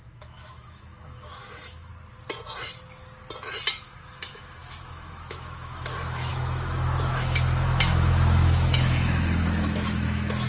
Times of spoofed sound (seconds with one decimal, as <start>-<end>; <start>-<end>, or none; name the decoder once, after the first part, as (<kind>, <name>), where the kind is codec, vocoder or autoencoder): 0.0-1.9 (autoencoder, DAC-VAE); 3.7-10.5